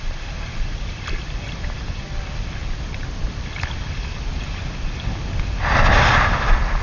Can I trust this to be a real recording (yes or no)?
yes